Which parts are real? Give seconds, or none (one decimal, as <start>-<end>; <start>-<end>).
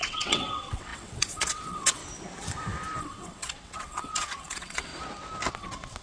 2.0-3.0; 4.9-5.5